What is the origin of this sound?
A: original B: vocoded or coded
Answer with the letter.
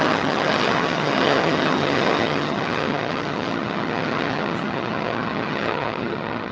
B